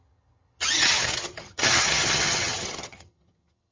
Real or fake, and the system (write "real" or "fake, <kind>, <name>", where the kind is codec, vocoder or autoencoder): fake, vocoder, HiFi-GAN